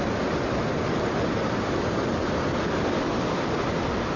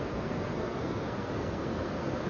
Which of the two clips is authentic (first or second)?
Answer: first